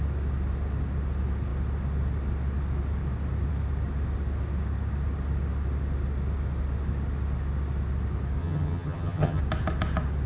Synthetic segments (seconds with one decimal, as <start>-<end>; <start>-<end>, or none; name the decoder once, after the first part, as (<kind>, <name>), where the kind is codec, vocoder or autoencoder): 8.4-9.4 (vocoder, HiFi-GAN)